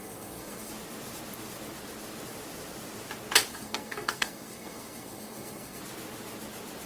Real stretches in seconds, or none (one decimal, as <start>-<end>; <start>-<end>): 0.7-3.5; 5.8-6.9